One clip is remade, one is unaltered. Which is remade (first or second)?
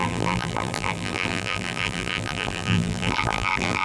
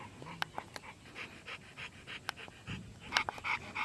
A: first